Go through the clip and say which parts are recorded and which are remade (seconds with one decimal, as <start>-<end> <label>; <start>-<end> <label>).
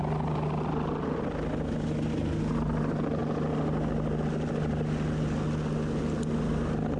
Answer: 0.0-7.0 recorded